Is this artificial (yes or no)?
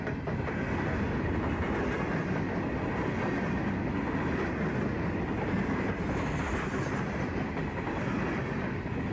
no